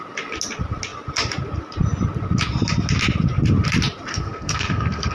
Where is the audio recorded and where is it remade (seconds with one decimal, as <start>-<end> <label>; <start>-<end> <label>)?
0.0-4.1 recorded; 4.1-5.1 remade